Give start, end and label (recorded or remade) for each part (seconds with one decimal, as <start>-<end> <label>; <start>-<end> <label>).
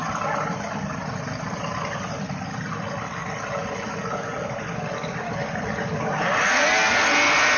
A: 0.0-7.6 recorded